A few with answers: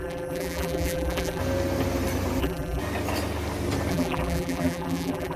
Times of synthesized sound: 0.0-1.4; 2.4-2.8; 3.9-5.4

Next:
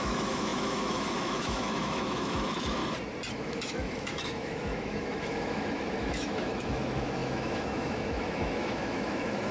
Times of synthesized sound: 0.0-2.8; 3.3-9.5

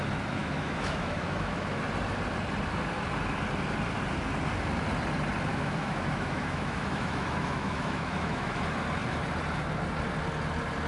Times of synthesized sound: 0.4-1.8; 5.5-8.6

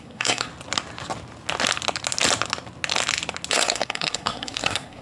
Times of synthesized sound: 0.0-0.5; 3.5-5.0

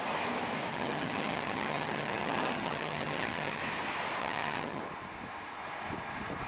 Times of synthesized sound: 0.7-3.6; 4.2-4.8